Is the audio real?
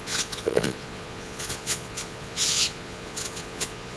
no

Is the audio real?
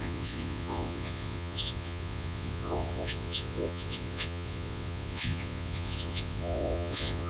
no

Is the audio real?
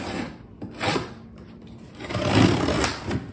yes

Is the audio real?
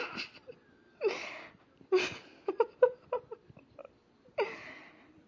yes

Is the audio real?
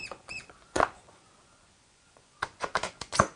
no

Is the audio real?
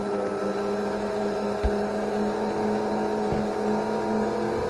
yes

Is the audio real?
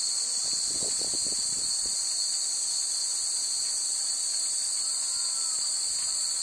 yes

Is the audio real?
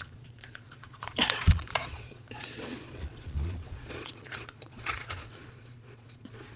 no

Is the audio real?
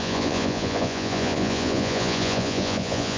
no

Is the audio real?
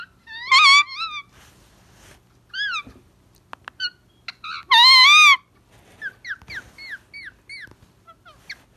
yes